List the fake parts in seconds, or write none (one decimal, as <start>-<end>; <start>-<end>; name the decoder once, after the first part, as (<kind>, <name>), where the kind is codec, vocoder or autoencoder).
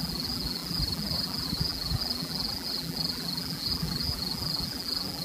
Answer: 0.0-5.2 (vocoder, BigVGAN v2)